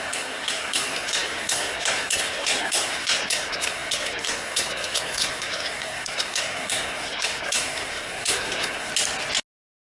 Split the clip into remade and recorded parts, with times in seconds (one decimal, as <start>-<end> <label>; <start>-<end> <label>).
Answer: 0.0-8.9 remade; 8.9-9.8 recorded